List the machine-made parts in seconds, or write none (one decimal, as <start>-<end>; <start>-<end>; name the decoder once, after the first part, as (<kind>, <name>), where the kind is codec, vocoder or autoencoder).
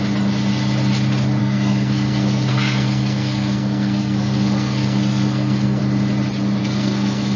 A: 1.4-5.8 (codec, SNAC); 6.6-7.4